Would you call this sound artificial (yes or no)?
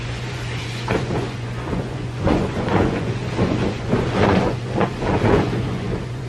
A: yes